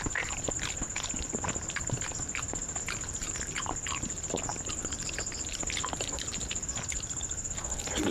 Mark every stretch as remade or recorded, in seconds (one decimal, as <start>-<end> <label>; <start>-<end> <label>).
0.0-4.5 recorded; 4.5-5.6 remade; 5.6-8.1 recorded